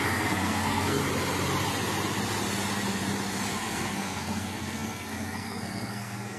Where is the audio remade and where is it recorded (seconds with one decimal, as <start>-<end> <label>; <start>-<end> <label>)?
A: 0.0-1.0 remade; 1.0-3.5 recorded; 3.5-6.4 remade